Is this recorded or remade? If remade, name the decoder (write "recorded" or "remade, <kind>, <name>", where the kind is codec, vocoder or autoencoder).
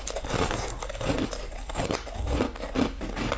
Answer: recorded